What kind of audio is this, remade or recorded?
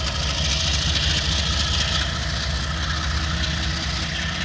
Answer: recorded